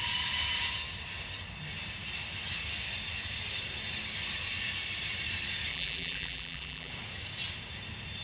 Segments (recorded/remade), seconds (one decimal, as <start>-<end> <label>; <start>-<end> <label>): 0.0-5.7 recorded; 5.7-6.9 remade; 6.9-8.2 recorded